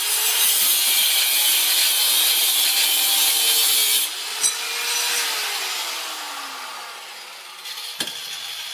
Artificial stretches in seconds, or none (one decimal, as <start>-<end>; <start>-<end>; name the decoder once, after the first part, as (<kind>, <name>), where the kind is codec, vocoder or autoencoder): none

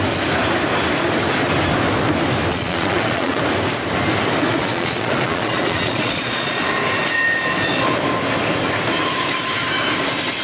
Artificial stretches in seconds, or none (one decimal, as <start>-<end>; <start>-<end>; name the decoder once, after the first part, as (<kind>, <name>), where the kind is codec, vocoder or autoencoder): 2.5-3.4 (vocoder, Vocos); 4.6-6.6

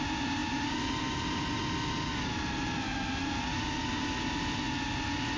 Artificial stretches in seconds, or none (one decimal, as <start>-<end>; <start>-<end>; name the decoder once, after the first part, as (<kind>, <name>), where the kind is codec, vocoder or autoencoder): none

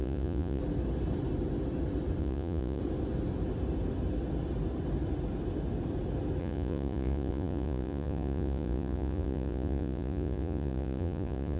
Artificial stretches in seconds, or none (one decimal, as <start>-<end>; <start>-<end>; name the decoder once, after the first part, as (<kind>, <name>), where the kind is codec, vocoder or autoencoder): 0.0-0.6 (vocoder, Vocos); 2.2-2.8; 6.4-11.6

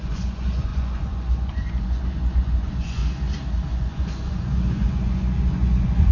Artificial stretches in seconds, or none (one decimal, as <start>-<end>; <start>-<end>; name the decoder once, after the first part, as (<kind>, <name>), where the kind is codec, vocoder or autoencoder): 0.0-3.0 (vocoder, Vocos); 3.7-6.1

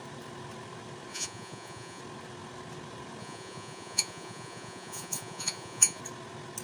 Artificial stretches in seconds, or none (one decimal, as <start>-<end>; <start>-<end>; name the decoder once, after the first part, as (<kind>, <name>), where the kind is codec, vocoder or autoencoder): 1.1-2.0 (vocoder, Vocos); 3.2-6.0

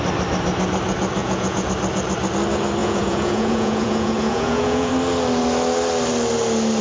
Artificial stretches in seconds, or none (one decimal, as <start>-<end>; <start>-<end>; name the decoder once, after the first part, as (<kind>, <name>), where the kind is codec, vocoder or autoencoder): 1.2-1.7 (vocoder, Vocos); 2.8-4.9

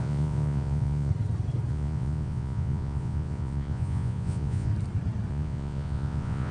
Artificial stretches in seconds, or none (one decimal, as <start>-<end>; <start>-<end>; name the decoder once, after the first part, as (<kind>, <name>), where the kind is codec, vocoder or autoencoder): 0.0-1.1 (vocoder, Vocos); 1.7-4.7; 5.3-6.5